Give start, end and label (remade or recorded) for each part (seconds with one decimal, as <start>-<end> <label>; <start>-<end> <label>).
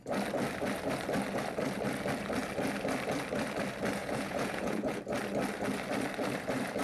0.0-4.0 recorded; 4.0-5.0 remade; 5.0-6.8 recorded